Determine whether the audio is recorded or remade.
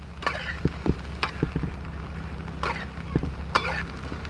recorded